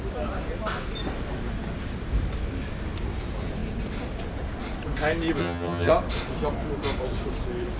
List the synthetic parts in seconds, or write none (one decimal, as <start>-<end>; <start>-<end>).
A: 5.4-5.9